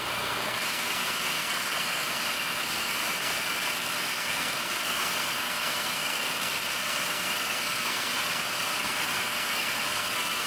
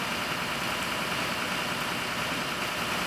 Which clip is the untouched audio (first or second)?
second